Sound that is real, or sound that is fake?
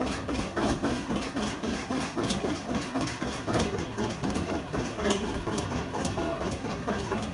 fake